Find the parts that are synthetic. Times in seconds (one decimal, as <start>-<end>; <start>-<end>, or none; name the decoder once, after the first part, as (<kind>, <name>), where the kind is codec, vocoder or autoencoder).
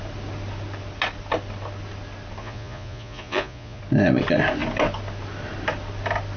2.4-3.8 (vocoder, Vocos)